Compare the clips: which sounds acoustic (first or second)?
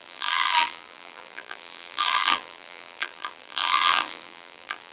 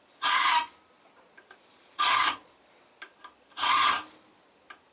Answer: second